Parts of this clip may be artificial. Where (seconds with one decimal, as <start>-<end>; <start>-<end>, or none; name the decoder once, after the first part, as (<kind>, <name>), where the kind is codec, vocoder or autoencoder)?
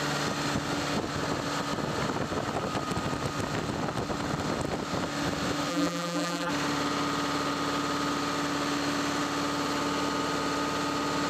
5.7-6.5 (vocoder, BigVGAN v2)